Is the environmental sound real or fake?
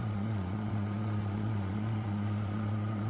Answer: fake